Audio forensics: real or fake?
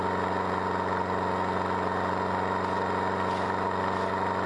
real